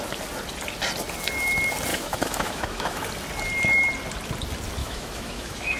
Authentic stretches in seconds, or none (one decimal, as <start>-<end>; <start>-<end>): 0.0-1.9; 3.0-4.8